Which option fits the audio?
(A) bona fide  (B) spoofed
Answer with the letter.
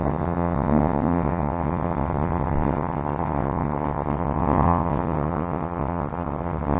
B